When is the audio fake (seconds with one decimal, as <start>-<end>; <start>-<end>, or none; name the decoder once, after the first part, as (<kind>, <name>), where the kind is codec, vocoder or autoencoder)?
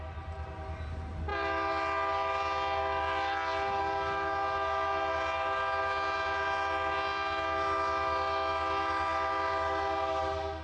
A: none